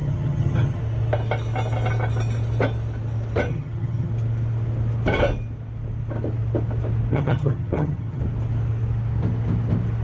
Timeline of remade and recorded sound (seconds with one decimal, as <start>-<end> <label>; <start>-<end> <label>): 0.0-0.8 remade; 0.8-3.5 recorded; 3.5-4.1 remade; 4.1-7.1 recorded; 7.1-8.2 remade; 8.2-10.0 recorded